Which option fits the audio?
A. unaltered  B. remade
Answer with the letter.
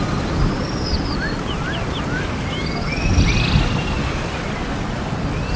A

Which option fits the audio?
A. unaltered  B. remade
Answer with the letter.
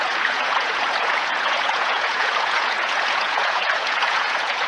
B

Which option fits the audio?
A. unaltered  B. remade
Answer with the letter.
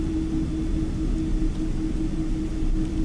A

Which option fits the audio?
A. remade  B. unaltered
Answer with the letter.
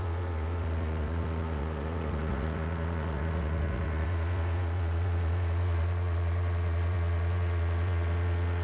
A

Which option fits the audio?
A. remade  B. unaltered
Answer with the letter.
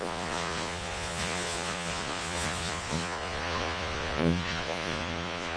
A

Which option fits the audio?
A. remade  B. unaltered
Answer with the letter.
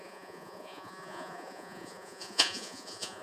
A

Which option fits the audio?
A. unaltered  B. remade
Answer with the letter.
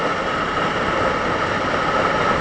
A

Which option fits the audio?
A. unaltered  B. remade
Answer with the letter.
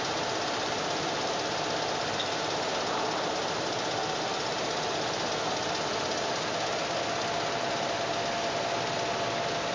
A